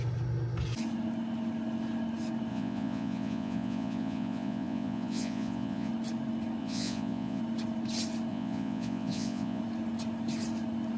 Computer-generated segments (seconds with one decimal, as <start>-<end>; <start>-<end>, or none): 2.5-5.9; 6.6-7.4; 8.3-9.6